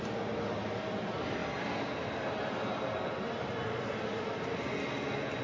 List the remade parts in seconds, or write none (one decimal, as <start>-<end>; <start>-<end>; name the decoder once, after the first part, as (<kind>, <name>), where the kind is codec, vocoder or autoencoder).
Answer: none